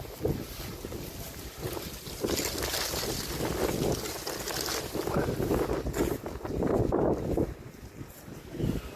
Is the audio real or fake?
real